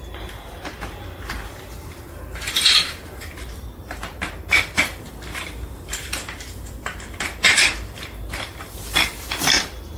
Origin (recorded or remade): remade